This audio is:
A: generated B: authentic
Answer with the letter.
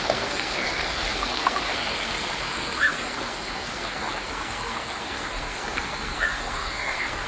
A